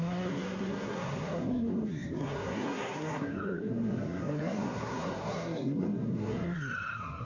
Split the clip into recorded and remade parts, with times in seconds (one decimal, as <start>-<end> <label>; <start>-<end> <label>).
0.0-7.2 remade